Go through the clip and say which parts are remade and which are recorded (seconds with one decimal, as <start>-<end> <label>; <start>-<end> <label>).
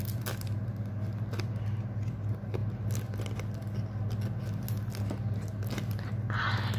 0.0-6.8 recorded